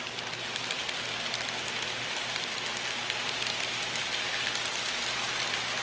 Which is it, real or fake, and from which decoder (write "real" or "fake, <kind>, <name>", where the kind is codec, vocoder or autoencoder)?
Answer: real